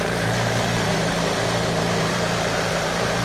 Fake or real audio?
fake